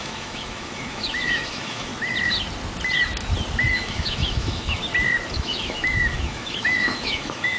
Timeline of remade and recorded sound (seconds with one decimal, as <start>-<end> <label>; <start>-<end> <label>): 0.0-1.9 remade; 1.9-3.7 recorded; 3.7-4.8 remade; 4.8-5.3 recorded; 5.3-7.6 remade